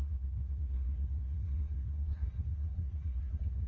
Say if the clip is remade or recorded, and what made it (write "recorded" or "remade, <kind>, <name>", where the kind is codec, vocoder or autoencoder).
remade, codec, SNAC